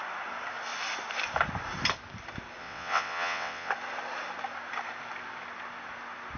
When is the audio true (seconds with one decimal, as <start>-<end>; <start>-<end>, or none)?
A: 0.0-2.6; 3.7-6.4